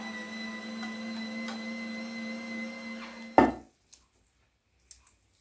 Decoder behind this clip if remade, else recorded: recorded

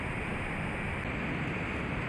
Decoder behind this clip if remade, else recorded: recorded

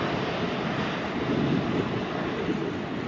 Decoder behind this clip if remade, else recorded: recorded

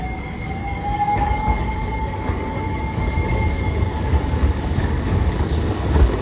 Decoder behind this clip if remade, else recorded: remade, codec, DAC